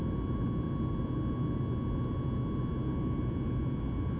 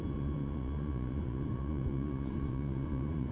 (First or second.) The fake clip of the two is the second